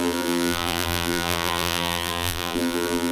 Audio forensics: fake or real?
fake